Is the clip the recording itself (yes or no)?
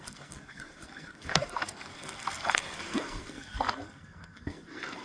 no